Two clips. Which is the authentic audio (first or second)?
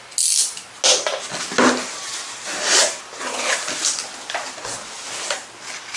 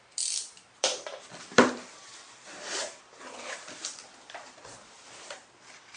first